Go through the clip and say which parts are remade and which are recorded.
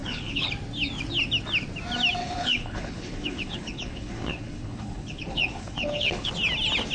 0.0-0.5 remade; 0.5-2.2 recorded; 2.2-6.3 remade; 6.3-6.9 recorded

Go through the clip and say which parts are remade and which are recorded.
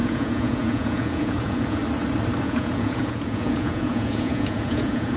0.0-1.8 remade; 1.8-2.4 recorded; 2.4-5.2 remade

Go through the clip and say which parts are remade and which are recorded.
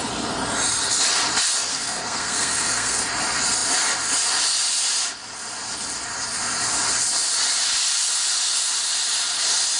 0.0-1.7 recorded; 1.7-3.0 remade; 3.0-9.8 recorded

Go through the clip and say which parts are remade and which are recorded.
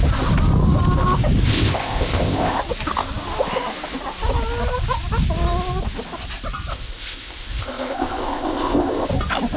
0.0-1.5 recorded; 1.5-2.6 remade; 2.6-6.7 recorded; 6.7-9.1 remade; 9.1-9.6 recorded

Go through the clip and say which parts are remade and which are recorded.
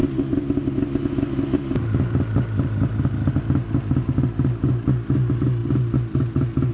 0.0-6.7 recorded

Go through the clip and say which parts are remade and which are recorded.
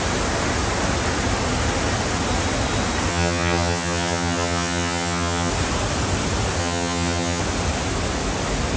0.0-3.1 recorded; 3.1-5.5 remade; 5.5-6.6 recorded; 6.6-7.4 remade; 7.4-8.8 recorded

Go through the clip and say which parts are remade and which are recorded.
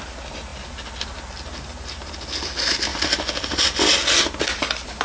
0.0-2.9 recorded; 2.9-3.8 remade; 3.8-5.0 recorded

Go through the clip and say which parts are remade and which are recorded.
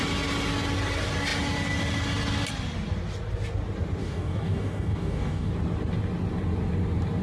0.0-4.0 recorded; 4.0-5.5 remade; 5.5-7.2 recorded